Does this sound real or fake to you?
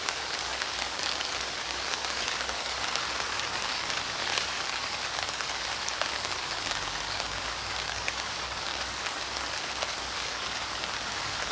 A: fake